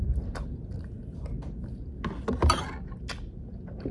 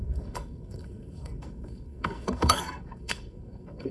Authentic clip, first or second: first